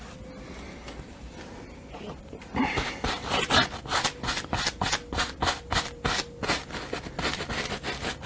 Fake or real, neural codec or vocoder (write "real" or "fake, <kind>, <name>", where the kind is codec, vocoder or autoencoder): real